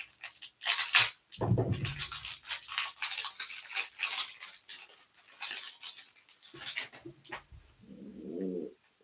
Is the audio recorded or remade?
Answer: recorded